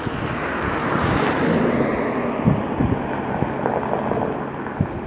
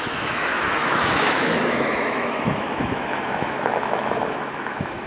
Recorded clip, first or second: first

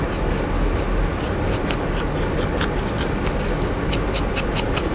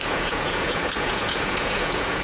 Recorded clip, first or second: first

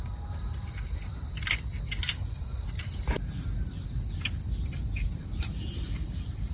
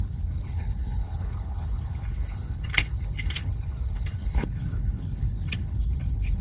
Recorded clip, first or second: first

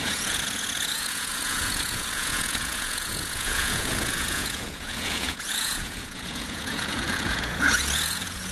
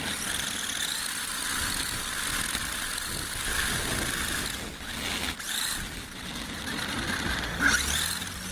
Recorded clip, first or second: second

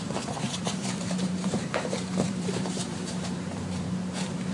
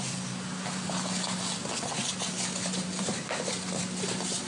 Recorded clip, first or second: second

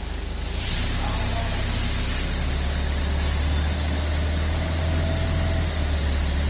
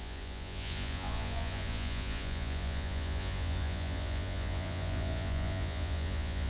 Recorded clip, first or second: first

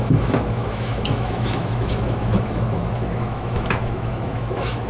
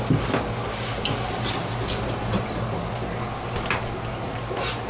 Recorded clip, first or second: second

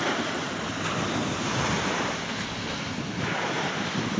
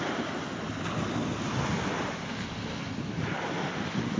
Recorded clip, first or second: second